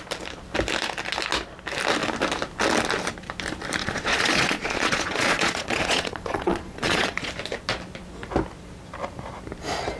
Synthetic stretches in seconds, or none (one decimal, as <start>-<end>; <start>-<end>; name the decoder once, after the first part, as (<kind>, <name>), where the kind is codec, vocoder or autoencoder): 3.8-7.3 (vocoder, Vocos)